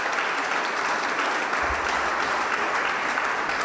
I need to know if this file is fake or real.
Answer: real